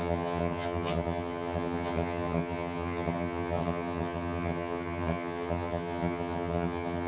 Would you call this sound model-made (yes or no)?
yes